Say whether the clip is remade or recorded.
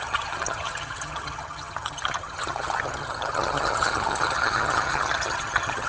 remade